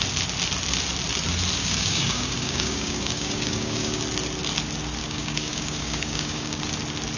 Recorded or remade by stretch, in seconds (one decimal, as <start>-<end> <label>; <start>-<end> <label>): 0.0-1.6 recorded; 1.6-4.0 remade; 4.0-5.0 recorded; 5.0-6.6 remade; 6.6-7.2 recorded